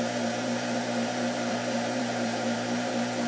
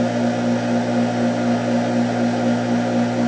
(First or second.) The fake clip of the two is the first